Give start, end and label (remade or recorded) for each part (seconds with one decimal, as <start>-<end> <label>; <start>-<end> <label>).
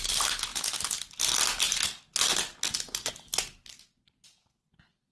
0.0-5.1 recorded